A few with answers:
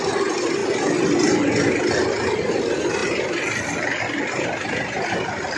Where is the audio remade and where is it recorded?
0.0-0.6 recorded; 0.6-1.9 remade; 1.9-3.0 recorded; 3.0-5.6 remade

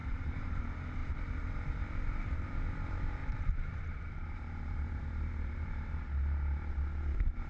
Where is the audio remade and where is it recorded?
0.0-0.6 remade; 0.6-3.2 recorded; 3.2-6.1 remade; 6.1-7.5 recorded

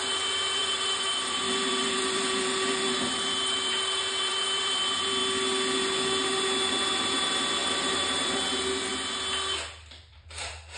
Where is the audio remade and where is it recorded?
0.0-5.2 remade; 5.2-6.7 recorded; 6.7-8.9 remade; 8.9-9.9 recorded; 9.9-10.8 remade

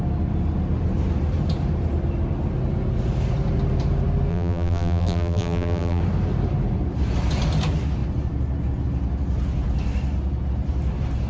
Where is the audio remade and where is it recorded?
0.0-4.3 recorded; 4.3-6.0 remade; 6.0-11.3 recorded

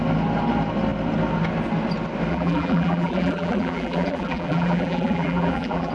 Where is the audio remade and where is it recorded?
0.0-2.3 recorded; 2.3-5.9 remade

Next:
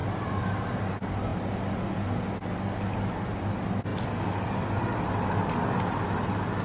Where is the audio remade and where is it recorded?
0.0-0.8 remade; 0.8-3.9 recorded; 3.9-4.8 remade; 4.8-6.6 recorded

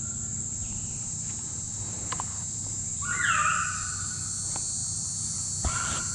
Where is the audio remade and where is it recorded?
0.0-0.6 recorded; 0.6-4.3 remade; 4.3-4.8 recorded; 4.8-6.1 remade

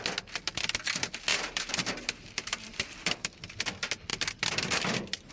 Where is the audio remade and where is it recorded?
0.0-1.3 recorded; 1.3-3.6 remade; 3.6-5.3 recorded